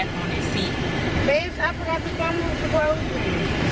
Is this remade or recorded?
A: remade